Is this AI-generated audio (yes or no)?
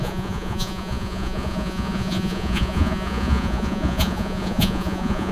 yes